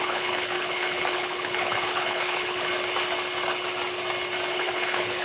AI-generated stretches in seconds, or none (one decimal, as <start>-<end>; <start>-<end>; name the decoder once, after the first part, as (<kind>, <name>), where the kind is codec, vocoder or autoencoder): 0.0-2.7 (codec, HILCodec); 4.5-5.2